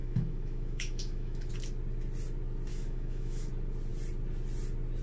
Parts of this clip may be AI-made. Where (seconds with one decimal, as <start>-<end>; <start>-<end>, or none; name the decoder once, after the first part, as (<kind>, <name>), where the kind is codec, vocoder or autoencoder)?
0.0-1.5 (autoencoder, DAC-VAE); 2.7-3.5

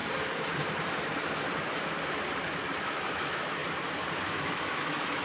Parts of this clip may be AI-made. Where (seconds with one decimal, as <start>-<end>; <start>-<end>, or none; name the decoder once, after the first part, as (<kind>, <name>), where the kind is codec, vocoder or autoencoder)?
2.8-3.6 (autoencoder, DAC-VAE); 4.2-5.2

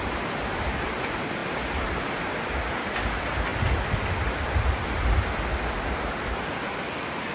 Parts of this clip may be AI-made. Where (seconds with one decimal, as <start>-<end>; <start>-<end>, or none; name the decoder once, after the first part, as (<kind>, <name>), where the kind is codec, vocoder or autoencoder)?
none

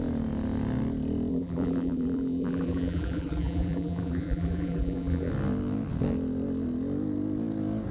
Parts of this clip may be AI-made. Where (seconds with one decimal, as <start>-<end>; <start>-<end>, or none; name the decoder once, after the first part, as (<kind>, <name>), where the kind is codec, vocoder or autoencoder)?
1.3-5.3 (vocoder, BigVGAN v2)

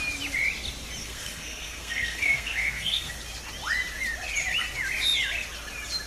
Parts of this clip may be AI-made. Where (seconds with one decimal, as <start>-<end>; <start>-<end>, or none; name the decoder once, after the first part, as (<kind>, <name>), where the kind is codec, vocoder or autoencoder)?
1.0-3.1 (codec, SNAC)

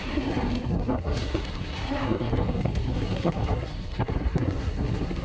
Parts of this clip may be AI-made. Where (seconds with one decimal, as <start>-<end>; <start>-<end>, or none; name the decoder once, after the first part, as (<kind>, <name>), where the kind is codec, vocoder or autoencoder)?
0.0-5.2 (codec, SNAC)

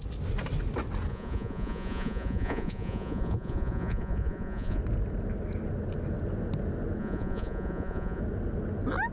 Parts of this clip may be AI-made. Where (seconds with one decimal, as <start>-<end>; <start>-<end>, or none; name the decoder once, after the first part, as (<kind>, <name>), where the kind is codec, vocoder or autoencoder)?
1.1-4.8 (vocoder, Vocos); 7.0-8.2